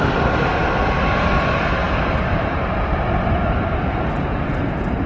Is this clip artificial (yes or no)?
no